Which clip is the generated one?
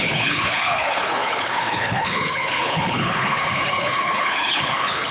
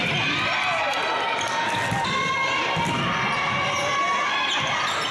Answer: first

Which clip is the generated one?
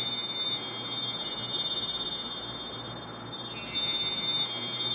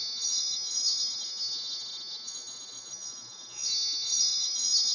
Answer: second